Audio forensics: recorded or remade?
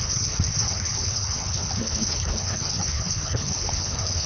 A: remade